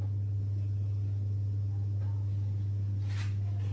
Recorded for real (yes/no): yes